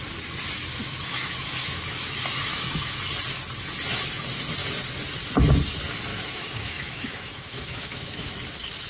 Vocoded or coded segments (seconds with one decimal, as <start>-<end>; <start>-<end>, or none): 0.7-3.0; 6.1-8.3